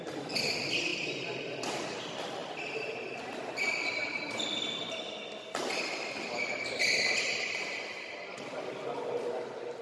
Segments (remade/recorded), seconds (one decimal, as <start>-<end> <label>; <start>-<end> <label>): 0.0-9.8 recorded